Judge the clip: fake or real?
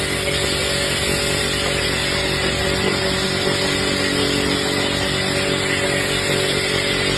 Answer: real